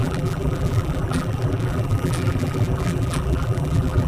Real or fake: fake